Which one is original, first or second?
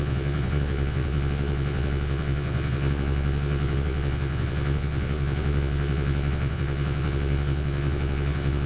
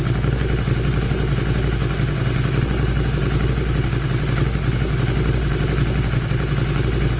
second